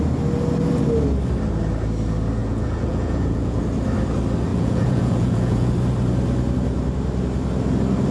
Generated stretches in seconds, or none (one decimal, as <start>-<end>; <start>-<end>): 2.4-3.6; 4.5-5.7